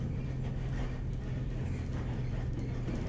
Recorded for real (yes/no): yes